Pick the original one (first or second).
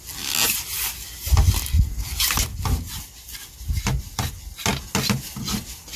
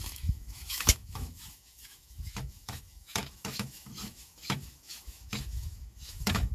first